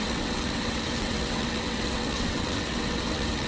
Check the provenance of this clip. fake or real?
fake